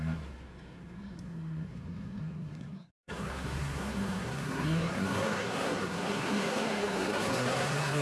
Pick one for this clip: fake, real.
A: fake